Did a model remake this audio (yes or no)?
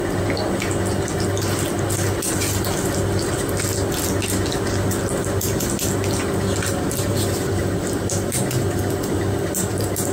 no